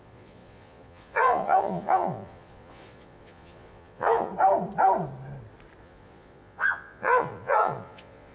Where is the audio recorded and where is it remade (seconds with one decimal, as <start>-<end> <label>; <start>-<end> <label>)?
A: 0.0-4.3 remade; 4.3-5.8 recorded; 5.8-8.3 remade

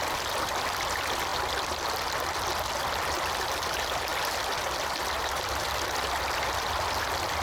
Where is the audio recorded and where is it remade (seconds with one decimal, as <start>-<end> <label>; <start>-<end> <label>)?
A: 0.0-7.4 recorded

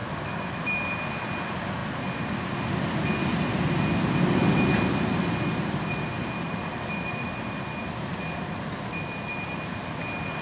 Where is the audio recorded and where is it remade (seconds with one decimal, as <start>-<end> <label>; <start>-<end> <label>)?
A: 0.0-10.4 recorded

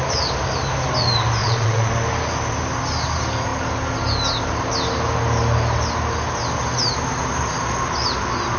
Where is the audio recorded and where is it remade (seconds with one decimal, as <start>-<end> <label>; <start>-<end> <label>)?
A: 0.0-1.4 recorded; 1.4-1.9 remade; 1.9-8.6 recorded

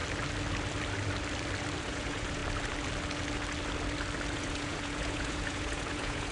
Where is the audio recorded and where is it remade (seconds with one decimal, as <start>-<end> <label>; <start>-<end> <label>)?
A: 0.0-1.8 recorded; 1.8-2.4 remade; 2.4-4.3 recorded; 4.3-6.3 remade